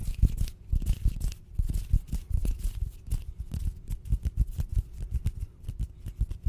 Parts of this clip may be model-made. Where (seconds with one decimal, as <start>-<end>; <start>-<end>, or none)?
0.7-6.5